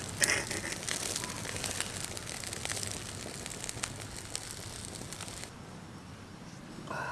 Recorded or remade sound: recorded